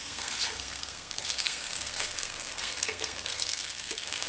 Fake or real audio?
fake